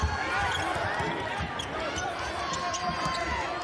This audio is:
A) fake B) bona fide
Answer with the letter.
B